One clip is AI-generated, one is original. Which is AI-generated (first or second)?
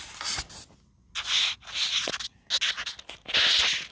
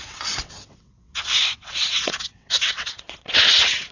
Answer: second